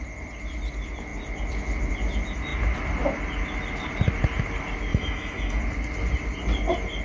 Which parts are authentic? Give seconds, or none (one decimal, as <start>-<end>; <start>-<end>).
0.0-4.9; 5.6-7.0